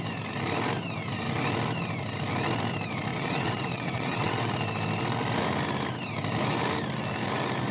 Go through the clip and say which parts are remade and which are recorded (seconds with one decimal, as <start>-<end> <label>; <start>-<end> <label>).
0.0-3.1 recorded; 3.1-4.5 remade; 4.5-7.7 recorded